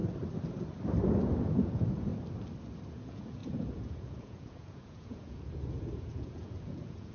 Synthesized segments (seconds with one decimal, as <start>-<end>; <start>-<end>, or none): 1.4-2.1; 2.9-7.1